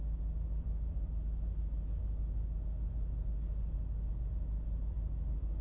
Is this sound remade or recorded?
recorded